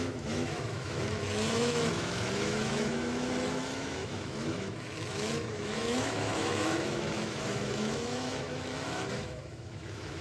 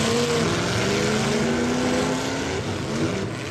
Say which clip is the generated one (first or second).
first